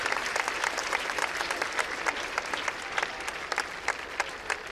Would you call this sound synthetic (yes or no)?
no